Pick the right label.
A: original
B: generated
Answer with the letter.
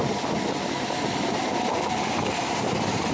A